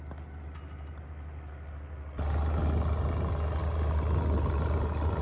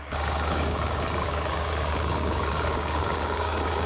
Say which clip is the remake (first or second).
second